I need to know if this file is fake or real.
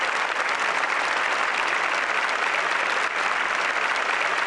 fake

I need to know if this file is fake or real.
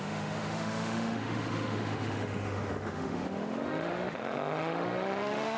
fake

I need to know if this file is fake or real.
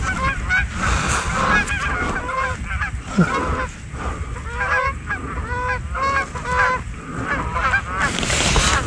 real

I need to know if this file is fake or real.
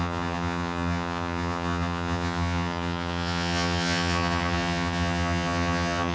fake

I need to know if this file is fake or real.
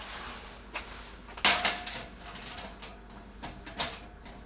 real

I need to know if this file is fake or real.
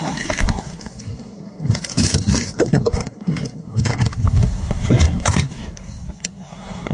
fake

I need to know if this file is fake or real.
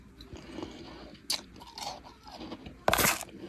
real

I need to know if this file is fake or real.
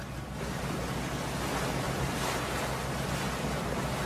real